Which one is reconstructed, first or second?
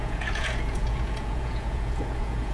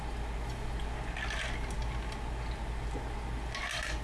first